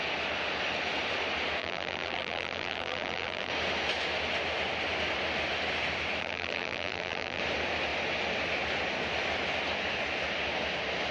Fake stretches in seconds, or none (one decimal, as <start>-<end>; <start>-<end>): 1.6-3.5; 6.2-7.4